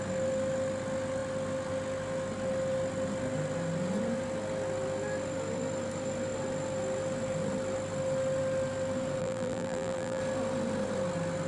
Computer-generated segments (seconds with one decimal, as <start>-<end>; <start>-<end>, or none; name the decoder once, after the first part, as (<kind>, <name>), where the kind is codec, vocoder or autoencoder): 9.2-10.2 (vocoder, BigVGAN v2)